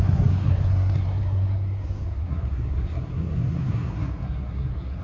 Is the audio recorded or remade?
remade